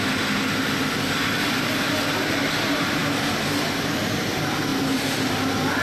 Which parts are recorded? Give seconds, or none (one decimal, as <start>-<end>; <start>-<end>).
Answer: 0.0-3.0; 4.3-5.8